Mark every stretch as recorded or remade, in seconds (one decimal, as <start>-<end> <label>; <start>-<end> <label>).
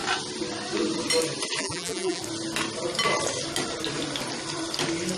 0.0-1.6 recorded; 1.6-2.2 remade; 2.2-5.2 recorded